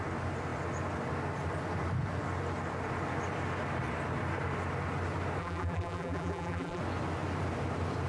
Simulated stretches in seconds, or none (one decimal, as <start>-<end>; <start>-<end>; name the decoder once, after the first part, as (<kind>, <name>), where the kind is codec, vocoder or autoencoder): 5.4-6.8 (vocoder, BigVGAN v2)